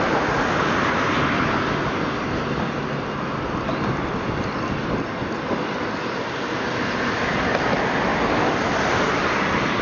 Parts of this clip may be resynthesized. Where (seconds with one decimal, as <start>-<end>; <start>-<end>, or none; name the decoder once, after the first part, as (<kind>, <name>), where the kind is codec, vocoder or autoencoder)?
none